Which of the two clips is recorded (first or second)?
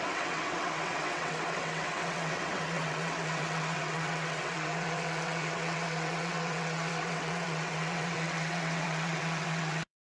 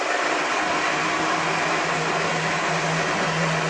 second